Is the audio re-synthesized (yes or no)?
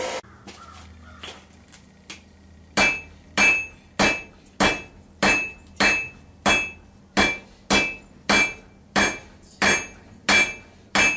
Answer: no